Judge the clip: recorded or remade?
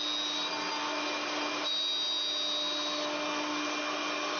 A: recorded